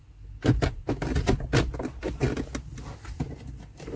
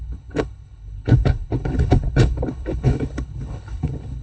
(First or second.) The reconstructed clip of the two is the second